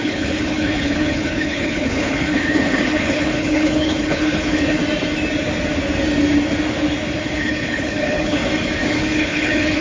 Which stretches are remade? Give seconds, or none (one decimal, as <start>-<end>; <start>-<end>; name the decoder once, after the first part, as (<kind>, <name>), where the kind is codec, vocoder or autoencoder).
0.0-4.8 (codec, HILCodec); 7.2-8.4; 8.9-9.8